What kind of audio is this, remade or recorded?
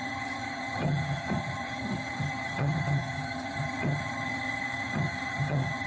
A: remade